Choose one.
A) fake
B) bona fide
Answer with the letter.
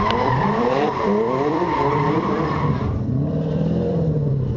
A